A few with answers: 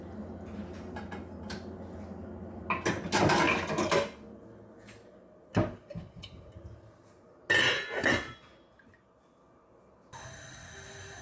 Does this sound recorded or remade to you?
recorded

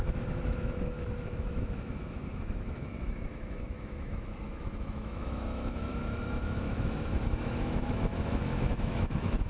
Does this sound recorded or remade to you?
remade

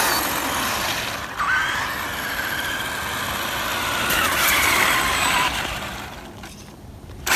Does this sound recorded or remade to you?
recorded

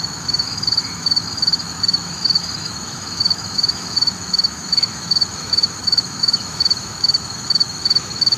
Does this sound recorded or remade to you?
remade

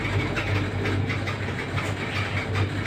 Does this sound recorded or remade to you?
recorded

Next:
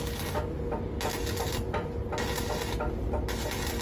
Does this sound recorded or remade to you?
recorded